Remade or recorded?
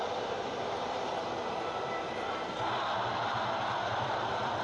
remade